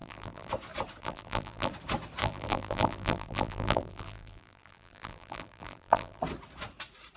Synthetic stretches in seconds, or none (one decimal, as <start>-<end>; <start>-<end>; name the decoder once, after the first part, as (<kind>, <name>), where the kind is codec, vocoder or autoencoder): 0.0-0.5 (vocoder, BigVGAN v2); 1.0-1.7; 2.2-6.2